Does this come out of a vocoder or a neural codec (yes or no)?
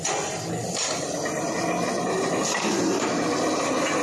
no